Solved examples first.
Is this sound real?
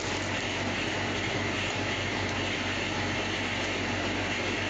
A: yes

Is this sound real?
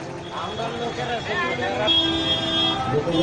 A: yes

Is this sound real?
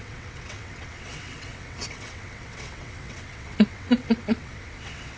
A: no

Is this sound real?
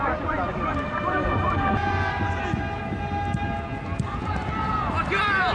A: yes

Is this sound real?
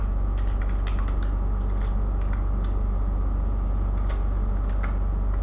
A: yes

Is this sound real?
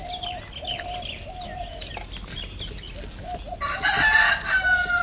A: yes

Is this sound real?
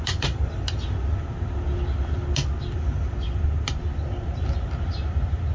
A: yes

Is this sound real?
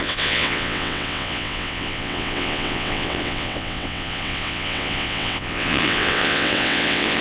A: no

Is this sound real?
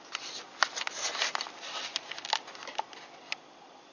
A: yes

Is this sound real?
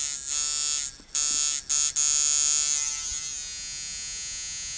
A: yes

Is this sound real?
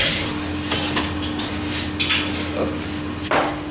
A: yes